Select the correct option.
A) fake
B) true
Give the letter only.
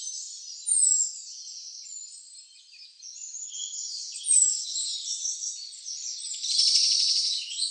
B